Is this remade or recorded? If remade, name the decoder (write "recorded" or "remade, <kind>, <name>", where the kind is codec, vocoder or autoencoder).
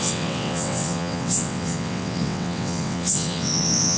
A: remade, vocoder, WaveNeXt